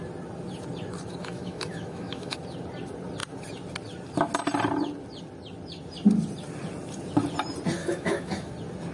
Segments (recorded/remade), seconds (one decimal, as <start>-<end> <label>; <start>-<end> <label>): 0.0-1.2 recorded; 1.2-2.4 remade; 2.4-7.8 recorded; 7.8-8.5 remade; 8.5-8.9 recorded